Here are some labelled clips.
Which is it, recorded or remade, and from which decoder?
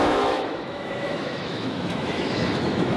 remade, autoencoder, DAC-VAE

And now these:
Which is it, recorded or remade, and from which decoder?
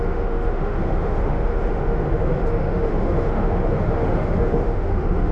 remade, autoencoder, DAC-VAE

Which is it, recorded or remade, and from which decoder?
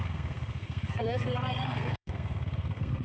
remade, codec, SNAC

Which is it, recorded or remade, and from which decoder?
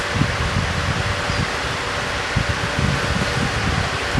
recorded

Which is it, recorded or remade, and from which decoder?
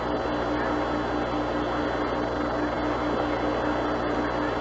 recorded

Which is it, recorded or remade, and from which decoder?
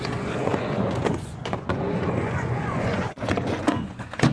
remade, vocoder, Vocos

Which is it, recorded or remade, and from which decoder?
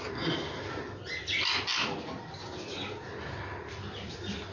recorded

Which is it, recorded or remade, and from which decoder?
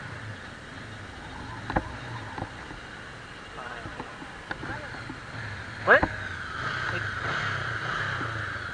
recorded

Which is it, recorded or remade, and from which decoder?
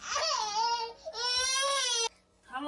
recorded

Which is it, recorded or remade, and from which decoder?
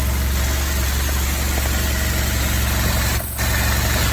recorded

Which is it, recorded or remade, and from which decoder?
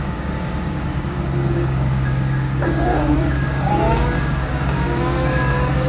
remade, codec, DAC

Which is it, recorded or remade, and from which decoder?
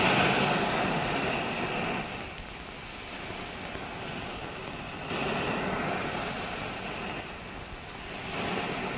recorded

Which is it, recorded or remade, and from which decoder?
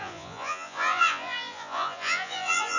remade, vocoder, Vocos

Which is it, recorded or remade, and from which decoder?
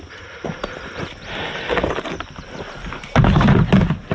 recorded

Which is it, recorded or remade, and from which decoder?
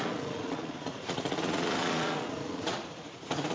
remade, vocoder, Vocos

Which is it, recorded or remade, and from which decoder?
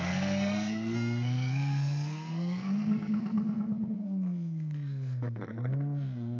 remade, codec, SNAC